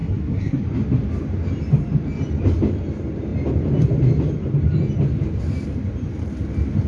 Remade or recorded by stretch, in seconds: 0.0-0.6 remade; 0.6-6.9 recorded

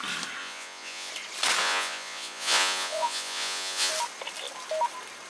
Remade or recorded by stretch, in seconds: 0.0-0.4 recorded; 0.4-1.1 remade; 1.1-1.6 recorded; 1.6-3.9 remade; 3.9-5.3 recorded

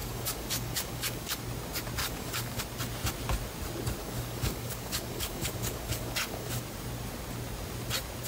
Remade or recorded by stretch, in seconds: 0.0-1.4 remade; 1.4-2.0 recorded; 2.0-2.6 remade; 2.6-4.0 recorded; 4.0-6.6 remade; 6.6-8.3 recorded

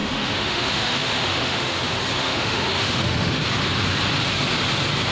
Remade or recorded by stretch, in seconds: 0.0-1.8 remade; 1.8-2.2 recorded; 2.2-3.4 remade; 3.4-5.1 recorded

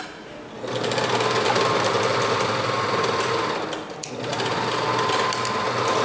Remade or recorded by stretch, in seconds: 0.0-6.0 recorded

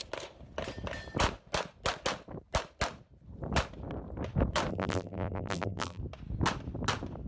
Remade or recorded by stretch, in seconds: 0.0-4.7 recorded; 4.7-6.0 remade; 6.0-7.3 recorded

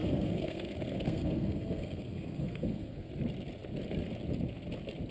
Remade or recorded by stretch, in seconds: 0.0-3.1 remade; 3.1-5.1 recorded